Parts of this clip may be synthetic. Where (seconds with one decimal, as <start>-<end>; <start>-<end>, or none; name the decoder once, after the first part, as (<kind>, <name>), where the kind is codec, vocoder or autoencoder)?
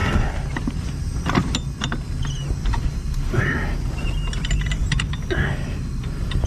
none